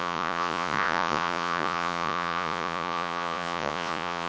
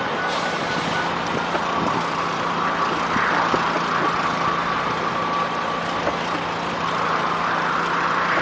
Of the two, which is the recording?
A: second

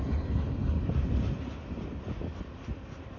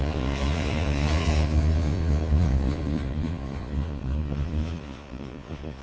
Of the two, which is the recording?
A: first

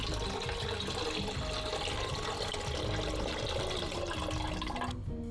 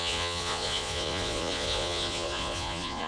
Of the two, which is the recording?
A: first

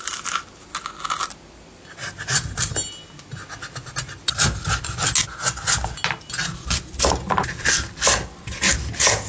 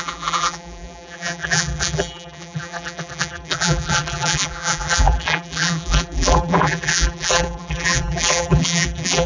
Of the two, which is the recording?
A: first